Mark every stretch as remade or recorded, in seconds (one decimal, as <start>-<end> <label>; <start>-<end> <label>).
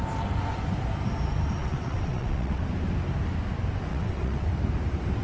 0.0-1.6 recorded; 1.6-2.6 remade; 2.6-3.9 recorded; 3.9-4.5 remade; 4.5-5.2 recorded